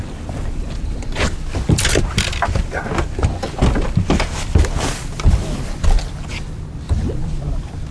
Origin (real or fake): real